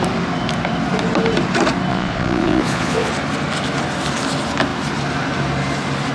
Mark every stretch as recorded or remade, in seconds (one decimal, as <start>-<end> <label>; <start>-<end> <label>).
0.0-1.9 recorded; 1.9-3.1 remade; 3.1-6.1 recorded